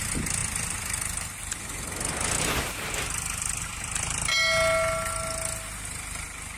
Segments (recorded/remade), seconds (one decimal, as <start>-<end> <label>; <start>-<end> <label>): 0.0-6.6 recorded